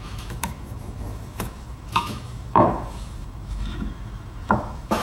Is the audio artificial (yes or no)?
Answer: yes